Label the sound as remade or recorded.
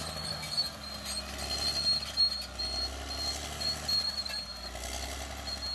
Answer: recorded